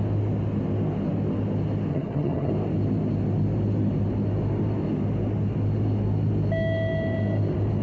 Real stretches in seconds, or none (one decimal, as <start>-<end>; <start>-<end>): 0.0-1.9; 2.5-7.8